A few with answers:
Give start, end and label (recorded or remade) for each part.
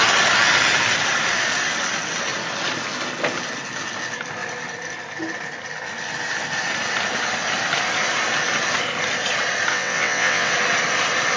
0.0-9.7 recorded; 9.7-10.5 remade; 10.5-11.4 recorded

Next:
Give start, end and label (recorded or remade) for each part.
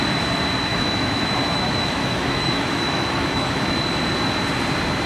0.0-0.7 recorded; 0.7-3.8 remade; 3.8-5.1 recorded